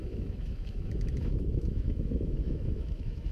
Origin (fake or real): fake